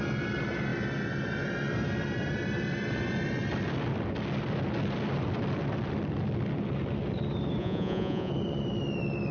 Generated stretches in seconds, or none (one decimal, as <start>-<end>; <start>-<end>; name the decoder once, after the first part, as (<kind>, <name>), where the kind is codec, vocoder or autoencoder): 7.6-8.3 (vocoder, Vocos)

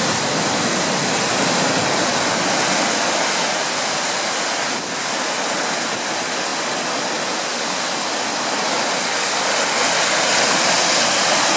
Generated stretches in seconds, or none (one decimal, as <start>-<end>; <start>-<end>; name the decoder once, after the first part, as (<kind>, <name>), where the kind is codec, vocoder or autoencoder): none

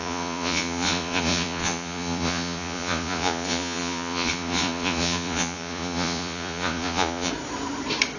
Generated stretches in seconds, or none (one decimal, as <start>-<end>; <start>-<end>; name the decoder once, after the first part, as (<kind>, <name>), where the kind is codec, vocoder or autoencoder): 0.0-7.3 (vocoder, Vocos)

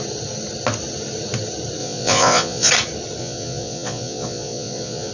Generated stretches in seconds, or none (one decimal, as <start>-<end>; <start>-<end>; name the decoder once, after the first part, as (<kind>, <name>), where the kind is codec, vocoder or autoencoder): 1.8-2.7 (vocoder, Vocos); 3.2-5.1

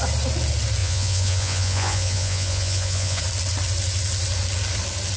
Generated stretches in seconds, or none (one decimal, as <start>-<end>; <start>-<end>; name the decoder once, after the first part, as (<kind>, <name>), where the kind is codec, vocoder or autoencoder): 0.8-3.2 (vocoder, Vocos)

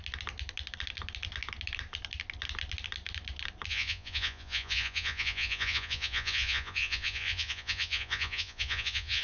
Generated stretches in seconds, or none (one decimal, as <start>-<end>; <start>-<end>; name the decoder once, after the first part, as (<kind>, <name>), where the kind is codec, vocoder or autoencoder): 3.7-9.2 (vocoder, Vocos)

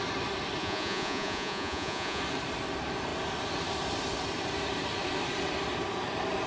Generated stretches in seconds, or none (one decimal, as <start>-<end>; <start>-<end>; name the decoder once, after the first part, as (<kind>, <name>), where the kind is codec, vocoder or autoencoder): 0.6-2.2 (vocoder, Vocos)

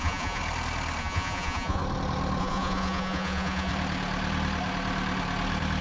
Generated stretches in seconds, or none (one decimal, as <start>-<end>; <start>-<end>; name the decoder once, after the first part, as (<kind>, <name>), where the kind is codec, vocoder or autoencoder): 0.0-0.4 (vocoder, Vocos); 1.0-1.8; 2.4-3.7